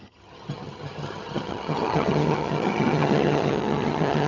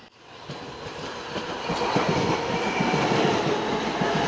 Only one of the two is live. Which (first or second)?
second